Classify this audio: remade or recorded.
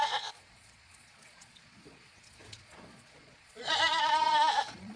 remade